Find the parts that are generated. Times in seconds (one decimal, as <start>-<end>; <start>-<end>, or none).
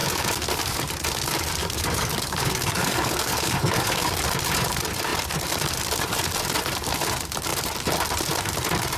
0.0-0.9; 1.6-4.2